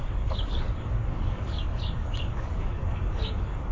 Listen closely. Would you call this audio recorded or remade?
remade